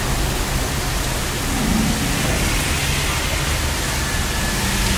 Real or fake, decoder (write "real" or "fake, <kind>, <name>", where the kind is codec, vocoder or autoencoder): real